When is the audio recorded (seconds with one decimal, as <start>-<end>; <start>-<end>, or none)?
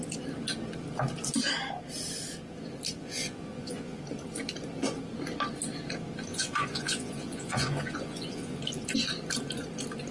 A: 0.0-3.0; 4.0-6.3; 8.6-10.1